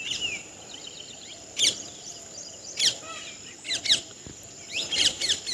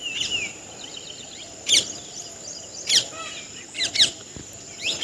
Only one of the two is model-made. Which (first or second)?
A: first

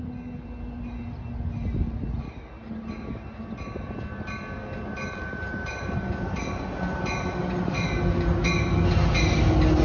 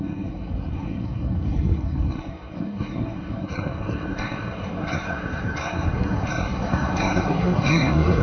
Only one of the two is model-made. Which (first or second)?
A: second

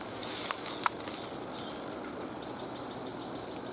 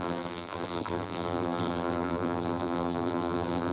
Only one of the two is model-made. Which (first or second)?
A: second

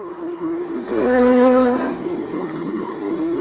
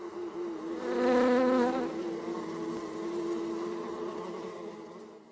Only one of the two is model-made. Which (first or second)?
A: first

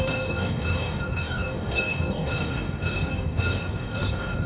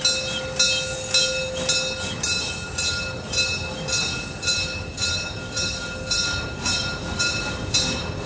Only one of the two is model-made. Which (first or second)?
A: first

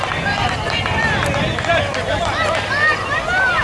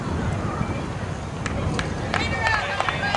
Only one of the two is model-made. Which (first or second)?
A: first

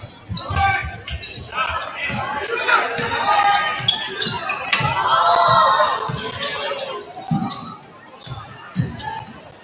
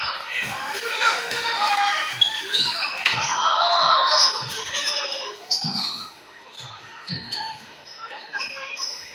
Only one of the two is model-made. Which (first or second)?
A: second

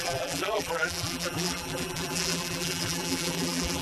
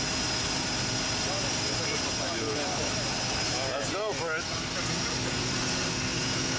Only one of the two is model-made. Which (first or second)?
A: first